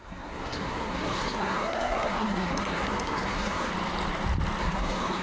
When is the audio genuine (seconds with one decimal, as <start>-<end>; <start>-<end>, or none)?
3.7-4.6